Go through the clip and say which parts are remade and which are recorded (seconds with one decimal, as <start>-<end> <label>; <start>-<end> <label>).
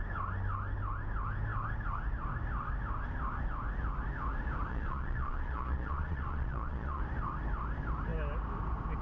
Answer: 0.0-4.7 recorded; 4.7-7.0 remade; 7.0-9.0 recorded